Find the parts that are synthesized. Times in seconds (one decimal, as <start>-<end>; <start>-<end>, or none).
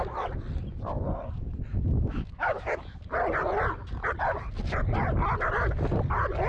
1.7-3.0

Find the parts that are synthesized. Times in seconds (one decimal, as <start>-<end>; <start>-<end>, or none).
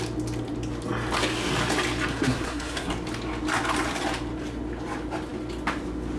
2.1-2.9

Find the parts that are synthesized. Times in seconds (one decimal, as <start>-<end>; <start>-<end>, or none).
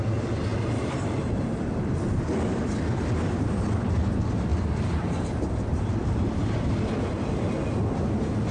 0.5-1.2; 4.5-7.5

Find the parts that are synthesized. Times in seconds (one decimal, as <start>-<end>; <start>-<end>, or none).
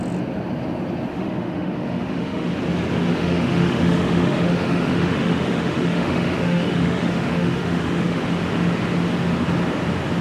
1.1-2.5; 3.1-8.2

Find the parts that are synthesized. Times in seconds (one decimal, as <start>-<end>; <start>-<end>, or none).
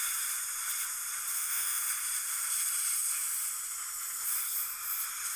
1.3-1.8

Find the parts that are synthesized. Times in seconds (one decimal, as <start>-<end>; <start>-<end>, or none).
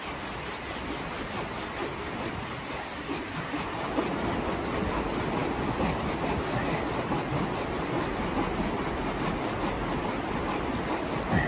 none